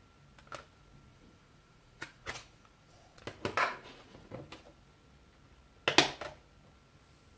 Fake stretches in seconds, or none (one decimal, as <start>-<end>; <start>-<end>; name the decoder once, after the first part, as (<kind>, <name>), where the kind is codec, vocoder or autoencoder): 1.1-3.2 (vocoder, Vocos); 3.7-4.4

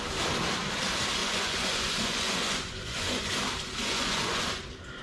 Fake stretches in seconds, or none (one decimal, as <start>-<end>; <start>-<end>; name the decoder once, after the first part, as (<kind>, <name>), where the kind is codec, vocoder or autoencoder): 1.2-3.3 (vocoder, Vocos); 3.8-4.6

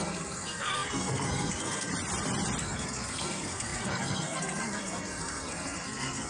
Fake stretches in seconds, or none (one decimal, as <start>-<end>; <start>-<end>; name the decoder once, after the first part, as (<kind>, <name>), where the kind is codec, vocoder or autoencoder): 0.0-1.9 (codec, SNAC); 2.6-6.3

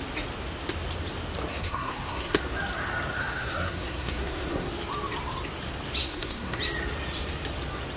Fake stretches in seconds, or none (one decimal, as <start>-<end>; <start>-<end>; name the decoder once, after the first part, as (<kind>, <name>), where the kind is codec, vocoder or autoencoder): 1.5-2.4 (codec, SNAC); 3.2-4.7; 6.0-6.6